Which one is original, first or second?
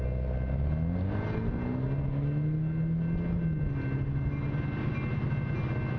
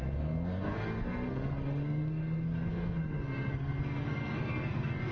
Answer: first